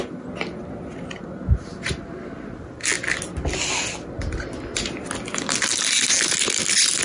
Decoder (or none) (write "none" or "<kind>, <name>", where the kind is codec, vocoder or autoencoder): none